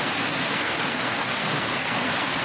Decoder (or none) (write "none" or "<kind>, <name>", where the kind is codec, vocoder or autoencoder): codec, SNAC